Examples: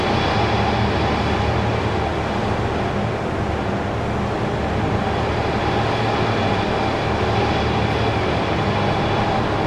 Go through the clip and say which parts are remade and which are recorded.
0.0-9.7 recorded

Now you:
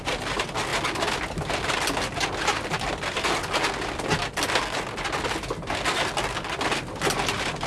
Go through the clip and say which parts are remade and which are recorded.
0.0-7.7 recorded

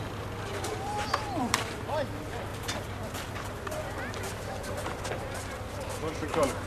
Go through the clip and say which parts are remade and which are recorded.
0.0-0.5 recorded; 0.5-1.9 remade; 1.9-6.7 recorded

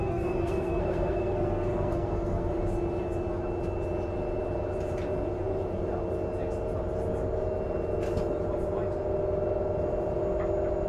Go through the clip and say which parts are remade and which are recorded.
0.0-2.5 remade; 2.5-10.9 recorded